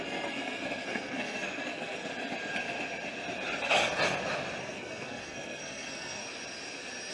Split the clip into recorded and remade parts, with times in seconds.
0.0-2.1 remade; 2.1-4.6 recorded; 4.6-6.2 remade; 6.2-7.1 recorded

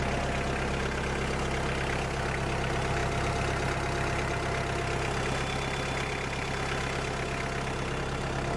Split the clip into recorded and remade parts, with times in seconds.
0.0-8.6 recorded

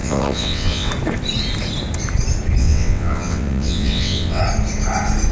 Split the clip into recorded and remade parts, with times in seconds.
0.0-0.9 remade; 0.9-2.6 recorded; 2.6-4.4 remade; 4.4-5.3 recorded

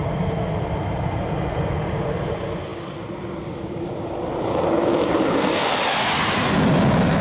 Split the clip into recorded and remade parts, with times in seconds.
0.0-7.2 recorded

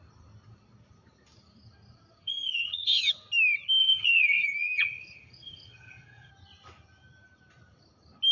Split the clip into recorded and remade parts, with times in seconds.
0.0-2.2 recorded; 2.2-3.1 remade; 3.1-3.8 recorded; 3.8-6.3 remade; 6.3-8.3 recorded

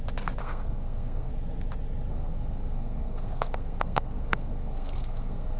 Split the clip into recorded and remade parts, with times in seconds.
0.0-0.4 recorded; 0.4-1.3 remade; 1.3-2.1 recorded; 2.1-5.6 remade